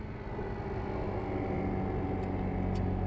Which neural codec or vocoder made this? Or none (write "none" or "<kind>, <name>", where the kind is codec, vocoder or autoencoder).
none